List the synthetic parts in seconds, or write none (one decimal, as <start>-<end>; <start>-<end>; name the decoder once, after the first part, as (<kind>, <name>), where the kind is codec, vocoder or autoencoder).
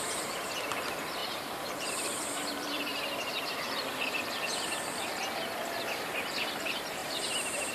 0.0-2.9 (vocoder, BigVGAN v2); 6.0-7.7